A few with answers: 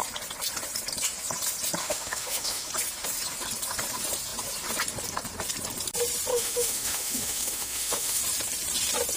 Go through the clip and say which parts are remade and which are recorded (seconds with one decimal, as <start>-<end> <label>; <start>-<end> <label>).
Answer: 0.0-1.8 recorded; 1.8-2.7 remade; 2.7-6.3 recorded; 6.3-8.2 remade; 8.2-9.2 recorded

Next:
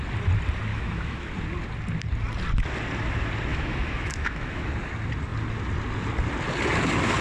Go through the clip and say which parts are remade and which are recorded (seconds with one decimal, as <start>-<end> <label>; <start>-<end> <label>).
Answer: 0.0-0.7 recorded; 0.7-1.3 remade; 1.3-3.5 recorded; 3.5-4.7 remade; 4.7-7.2 recorded

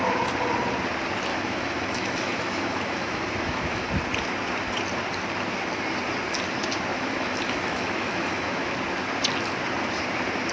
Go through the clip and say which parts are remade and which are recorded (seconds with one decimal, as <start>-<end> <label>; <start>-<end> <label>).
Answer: 0.0-1.3 recorded; 1.3-3.9 remade; 3.9-6.9 recorded; 6.9-8.7 remade; 8.7-10.5 recorded

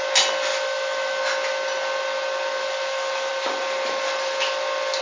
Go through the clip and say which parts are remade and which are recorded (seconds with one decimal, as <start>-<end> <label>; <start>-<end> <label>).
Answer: 0.0-0.5 recorded; 0.5-1.2 remade; 1.2-2.6 recorded; 2.6-3.3 remade; 3.3-5.0 recorded

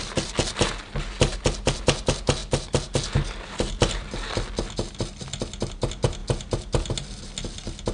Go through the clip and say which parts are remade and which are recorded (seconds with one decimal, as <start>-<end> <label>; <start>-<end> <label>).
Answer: 0.0-7.9 recorded

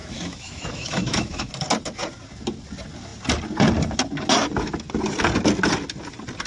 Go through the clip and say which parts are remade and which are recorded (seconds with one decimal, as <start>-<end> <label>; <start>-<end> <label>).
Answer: 0.0-1.5 remade; 1.5-6.5 recorded

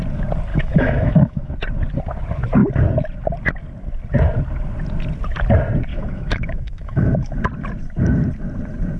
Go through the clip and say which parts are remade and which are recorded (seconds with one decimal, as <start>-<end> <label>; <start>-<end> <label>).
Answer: 0.0-0.5 recorded; 0.5-1.5 remade; 1.5-5.9 recorded; 5.9-7.4 remade; 7.4-9.0 recorded

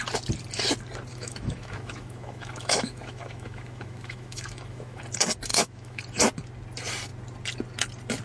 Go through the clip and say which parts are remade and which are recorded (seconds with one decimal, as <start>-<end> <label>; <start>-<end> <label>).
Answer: 0.0-1.1 recorded; 1.1-5.0 remade; 5.0-5.5 recorded; 5.5-6.0 remade; 6.0-8.2 recorded